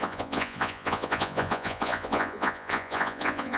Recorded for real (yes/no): no